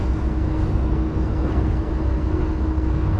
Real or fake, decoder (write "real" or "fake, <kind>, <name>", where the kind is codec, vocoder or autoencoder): fake, codec, SNAC